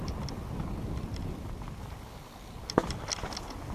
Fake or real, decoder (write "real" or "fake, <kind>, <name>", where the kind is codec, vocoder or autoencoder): real